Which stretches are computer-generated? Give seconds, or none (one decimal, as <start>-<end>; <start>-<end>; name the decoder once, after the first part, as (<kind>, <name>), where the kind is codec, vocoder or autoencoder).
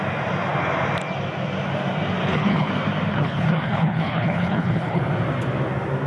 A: 2.2-2.7 (codec, HILCodec); 3.1-5.0